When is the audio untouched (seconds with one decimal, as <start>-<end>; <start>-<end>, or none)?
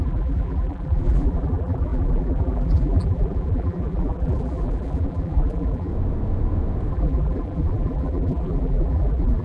5.9-6.9